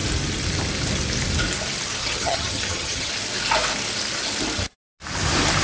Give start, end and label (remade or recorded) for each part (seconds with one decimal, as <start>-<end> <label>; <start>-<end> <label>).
0.0-2.0 recorded; 2.0-3.1 remade; 3.1-5.6 recorded